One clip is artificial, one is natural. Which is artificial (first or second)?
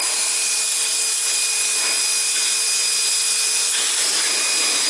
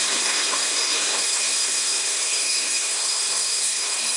second